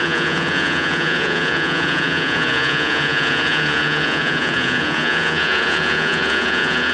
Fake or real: fake